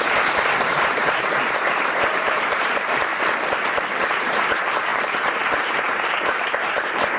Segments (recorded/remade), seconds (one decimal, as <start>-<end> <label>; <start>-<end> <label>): 0.0-3.1 remade; 3.1-4.1 recorded; 4.1-7.2 remade